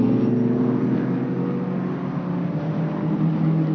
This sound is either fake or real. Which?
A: real